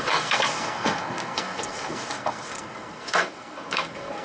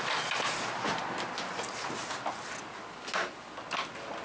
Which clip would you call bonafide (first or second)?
second